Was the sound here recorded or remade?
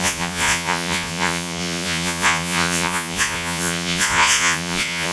remade